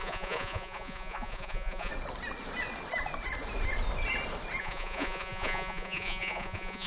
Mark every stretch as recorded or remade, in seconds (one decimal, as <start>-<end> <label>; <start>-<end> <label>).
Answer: 0.0-1.9 remade; 1.9-4.6 recorded; 4.6-6.9 remade